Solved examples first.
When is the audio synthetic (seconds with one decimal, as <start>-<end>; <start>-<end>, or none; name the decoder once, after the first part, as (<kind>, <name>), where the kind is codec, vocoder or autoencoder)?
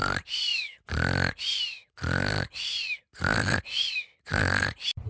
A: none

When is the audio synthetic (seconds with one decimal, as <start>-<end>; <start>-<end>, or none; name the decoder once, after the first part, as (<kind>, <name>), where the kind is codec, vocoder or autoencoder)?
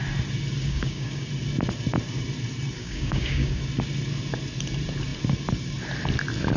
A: 0.6-1.3 (codec, DAC); 2.8-3.6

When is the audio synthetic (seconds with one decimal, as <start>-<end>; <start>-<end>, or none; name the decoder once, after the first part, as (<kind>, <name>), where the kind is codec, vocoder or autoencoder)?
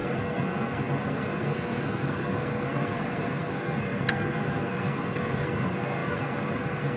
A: 0.0-7.0 (codec, SNAC)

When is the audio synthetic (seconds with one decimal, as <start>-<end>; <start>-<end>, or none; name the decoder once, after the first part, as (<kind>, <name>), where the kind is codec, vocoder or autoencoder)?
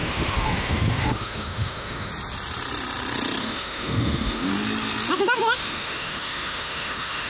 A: 0.0-2.1 (autoencoder, DAC-VAE); 3.4-4.5; 5.1-7.3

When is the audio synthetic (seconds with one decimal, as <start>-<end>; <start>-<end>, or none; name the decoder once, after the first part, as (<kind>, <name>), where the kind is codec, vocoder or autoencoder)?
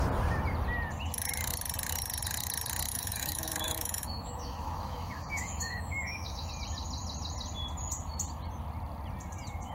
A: 2.9-6.5 (autoencoder, DAC-VAE)